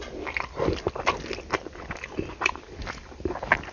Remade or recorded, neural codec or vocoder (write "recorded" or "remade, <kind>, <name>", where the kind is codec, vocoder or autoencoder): recorded